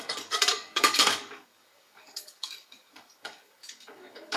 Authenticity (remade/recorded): remade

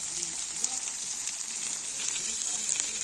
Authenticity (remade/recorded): recorded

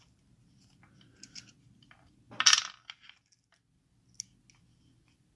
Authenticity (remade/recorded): recorded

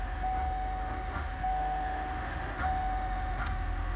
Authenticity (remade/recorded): remade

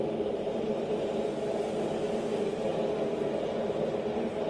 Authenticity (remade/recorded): recorded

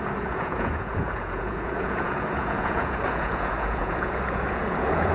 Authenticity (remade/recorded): remade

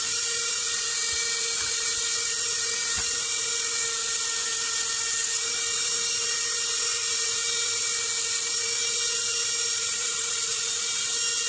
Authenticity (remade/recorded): recorded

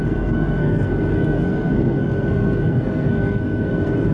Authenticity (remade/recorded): remade